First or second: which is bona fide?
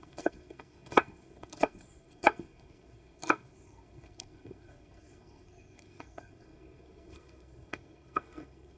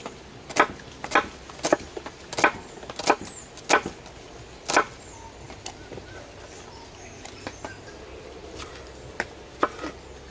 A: second